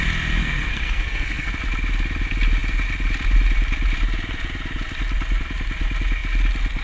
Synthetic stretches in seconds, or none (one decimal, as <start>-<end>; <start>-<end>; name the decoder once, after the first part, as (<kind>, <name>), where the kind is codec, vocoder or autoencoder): 0.4-1.5 (codec, SNAC)